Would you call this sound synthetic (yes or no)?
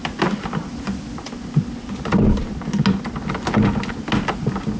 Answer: no